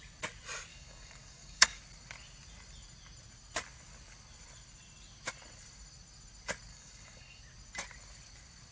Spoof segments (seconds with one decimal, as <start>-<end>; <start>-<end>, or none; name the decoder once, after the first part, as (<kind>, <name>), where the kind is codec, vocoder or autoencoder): 0.7-1.8 (codec, DAC); 6.7-7.4